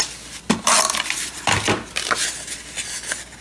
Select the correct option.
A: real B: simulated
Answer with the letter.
A